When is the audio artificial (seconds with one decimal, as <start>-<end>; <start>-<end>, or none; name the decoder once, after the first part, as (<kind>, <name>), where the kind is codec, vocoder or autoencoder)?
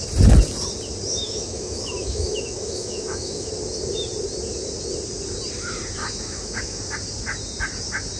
1.2-3.5 (autoencoder, DAC-VAE); 6.0-6.8